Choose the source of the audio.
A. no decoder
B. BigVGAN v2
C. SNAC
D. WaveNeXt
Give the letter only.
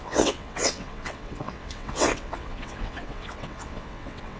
D